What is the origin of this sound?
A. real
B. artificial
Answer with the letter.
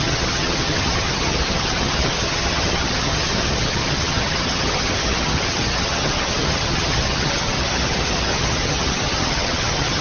B